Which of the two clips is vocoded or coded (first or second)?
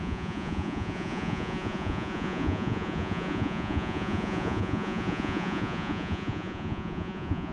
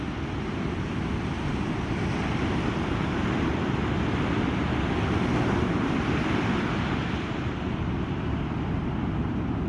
first